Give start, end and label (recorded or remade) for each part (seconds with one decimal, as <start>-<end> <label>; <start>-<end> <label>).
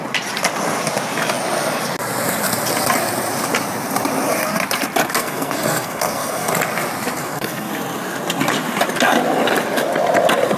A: 0.0-5.2 recorded; 5.2-6.5 remade; 6.5-7.2 recorded; 7.2-7.7 remade; 7.7-10.6 recorded